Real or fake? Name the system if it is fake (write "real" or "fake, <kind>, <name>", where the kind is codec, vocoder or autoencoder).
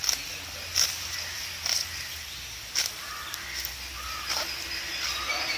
real